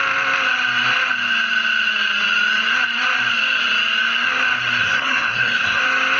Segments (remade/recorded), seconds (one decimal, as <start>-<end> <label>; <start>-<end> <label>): 0.0-4.8 recorded; 4.8-5.8 remade; 5.8-6.2 recorded